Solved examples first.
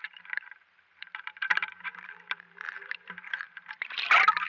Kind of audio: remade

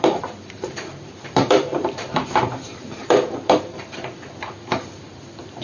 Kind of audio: remade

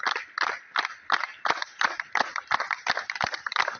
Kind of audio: remade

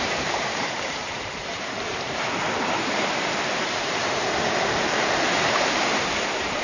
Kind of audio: remade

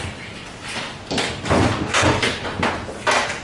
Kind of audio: recorded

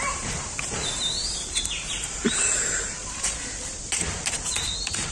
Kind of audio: remade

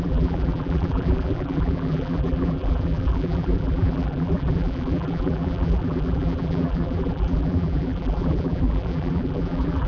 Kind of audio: remade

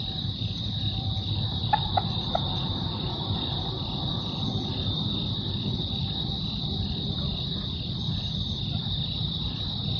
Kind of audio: remade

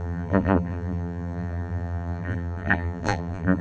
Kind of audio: remade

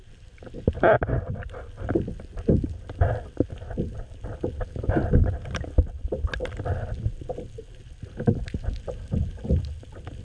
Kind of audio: recorded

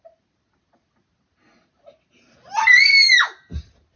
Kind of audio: recorded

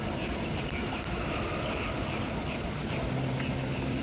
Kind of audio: remade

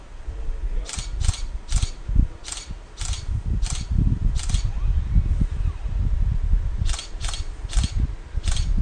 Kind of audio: recorded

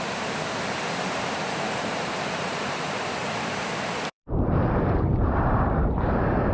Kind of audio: remade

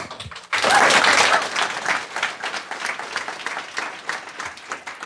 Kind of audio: recorded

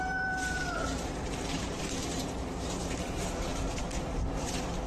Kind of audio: remade